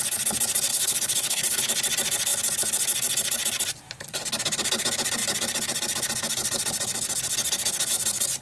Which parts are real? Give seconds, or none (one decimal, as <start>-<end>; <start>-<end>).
0.0-0.7; 1.6-8.4